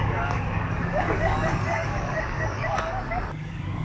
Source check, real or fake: fake